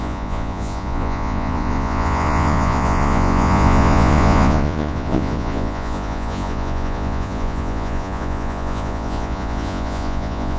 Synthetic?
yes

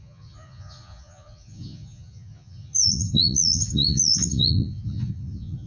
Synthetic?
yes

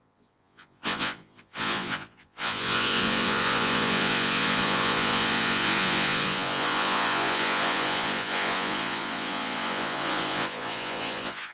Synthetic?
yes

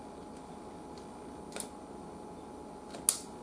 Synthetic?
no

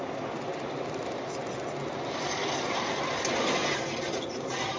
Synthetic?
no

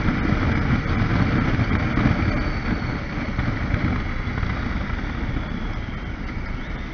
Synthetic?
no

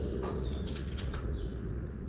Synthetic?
yes